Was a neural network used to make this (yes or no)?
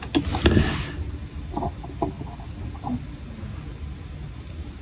no